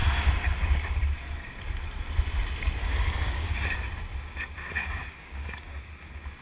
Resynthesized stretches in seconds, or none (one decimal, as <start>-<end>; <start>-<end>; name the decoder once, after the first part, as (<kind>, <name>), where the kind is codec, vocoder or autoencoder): 2.8-3.5 (codec, DAC); 4.8-5.9